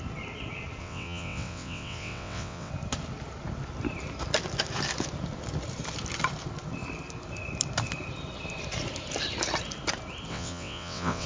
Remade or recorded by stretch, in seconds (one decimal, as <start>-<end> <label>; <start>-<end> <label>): 0.0-0.8 recorded; 0.8-2.7 remade; 2.7-10.3 recorded; 10.3-11.3 remade